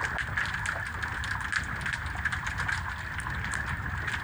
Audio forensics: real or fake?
real